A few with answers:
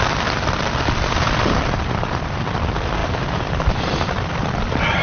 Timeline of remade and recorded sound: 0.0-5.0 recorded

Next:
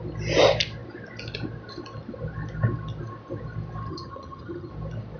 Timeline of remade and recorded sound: 0.0-3.9 recorded; 3.9-4.7 remade; 4.7-5.2 recorded

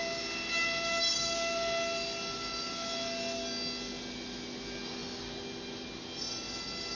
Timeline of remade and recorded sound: 0.0-6.9 recorded

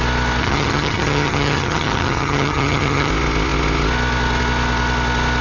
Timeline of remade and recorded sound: 0.0-0.4 recorded; 0.4-3.1 remade; 3.1-5.4 recorded

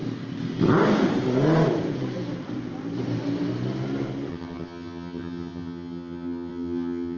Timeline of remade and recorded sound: 0.0-4.3 recorded; 4.3-7.2 remade

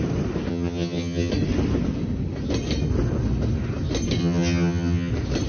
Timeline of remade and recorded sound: 0.0-0.5 recorded; 0.5-1.3 remade; 1.3-4.2 recorded; 4.2-5.1 remade; 5.1-5.5 recorded

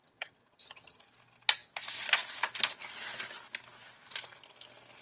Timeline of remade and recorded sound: 0.0-1.0 remade; 1.0-5.0 recorded

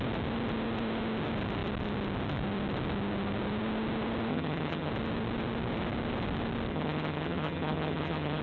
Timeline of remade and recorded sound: 0.0-4.3 recorded; 4.3-4.9 remade; 4.9-6.7 recorded; 6.7-8.4 remade